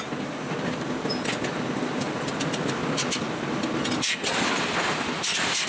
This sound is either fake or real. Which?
real